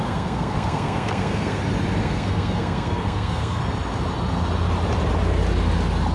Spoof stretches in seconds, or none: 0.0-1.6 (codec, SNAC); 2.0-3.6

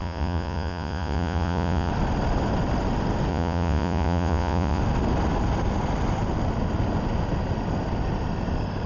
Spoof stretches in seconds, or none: 0.0-1.9 (vocoder, Vocos); 3.3-4.8

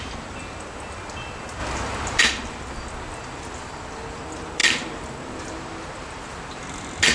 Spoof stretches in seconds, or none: none

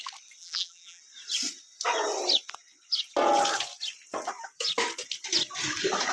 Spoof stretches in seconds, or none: 0.4-1.0 (vocoder, BigVGAN v2)

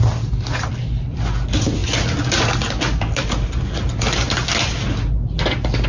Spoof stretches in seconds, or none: none

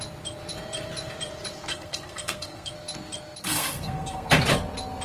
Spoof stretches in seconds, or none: 1.7-2.7 (codec, SNAC); 3.4-4.3